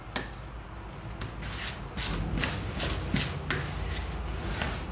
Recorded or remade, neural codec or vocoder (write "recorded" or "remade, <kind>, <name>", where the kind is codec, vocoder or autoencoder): recorded